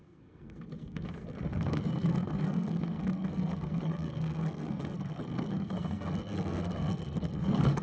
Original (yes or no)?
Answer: no